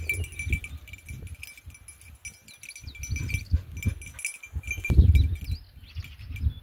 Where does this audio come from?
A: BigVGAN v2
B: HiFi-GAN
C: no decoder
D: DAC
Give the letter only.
C